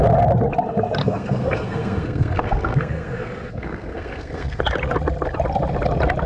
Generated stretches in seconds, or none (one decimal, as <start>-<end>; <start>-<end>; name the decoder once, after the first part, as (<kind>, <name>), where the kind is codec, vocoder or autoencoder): 1.0-4.6 (codec, SNAC)